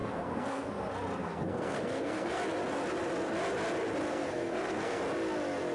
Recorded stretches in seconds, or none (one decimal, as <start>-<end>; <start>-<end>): 0.7-1.2; 2.4-4.1; 5.0-5.7